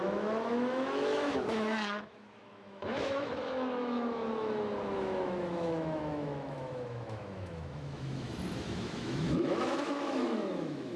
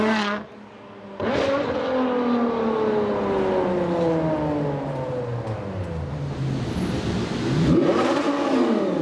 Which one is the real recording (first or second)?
second